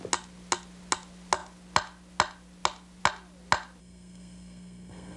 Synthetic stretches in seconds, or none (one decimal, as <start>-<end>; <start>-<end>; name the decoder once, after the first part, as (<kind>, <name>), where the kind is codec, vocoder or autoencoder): 3.8-5.2 (codec, SNAC)